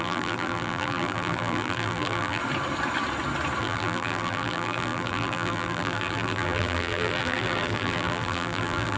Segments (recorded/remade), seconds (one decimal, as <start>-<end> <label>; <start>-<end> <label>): 0.0-2.4 remade; 2.4-3.6 recorded; 3.6-9.0 remade